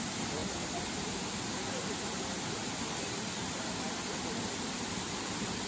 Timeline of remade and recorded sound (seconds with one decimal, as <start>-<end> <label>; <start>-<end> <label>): 0.0-5.7 recorded